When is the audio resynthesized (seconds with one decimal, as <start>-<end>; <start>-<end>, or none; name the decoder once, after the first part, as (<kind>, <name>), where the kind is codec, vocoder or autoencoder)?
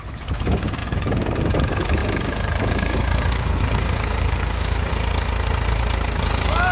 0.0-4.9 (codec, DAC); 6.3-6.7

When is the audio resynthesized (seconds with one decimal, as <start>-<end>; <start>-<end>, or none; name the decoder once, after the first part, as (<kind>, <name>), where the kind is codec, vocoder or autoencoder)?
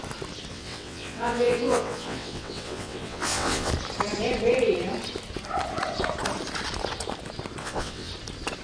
0.5-3.7 (vocoder, WaveNeXt); 7.6-8.1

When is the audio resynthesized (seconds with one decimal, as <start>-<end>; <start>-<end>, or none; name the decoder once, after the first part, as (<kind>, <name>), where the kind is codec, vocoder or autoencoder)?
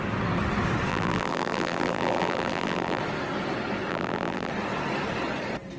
0.9-3.0 (vocoder, BigVGAN v2); 3.9-4.5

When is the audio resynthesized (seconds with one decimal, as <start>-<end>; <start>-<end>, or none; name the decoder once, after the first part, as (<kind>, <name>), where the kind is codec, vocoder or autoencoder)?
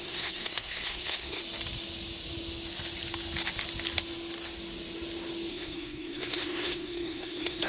0.0-1.4 (codec, SNAC); 5.5-7.7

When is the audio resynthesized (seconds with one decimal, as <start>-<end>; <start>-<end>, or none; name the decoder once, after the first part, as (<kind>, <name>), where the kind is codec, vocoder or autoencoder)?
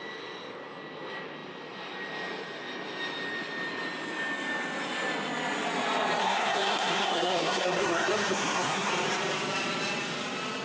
6.2-8.9 (codec, SNAC)